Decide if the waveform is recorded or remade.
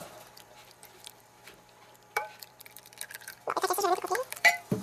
remade